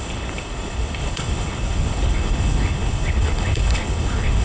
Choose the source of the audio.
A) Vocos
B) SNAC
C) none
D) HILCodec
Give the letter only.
D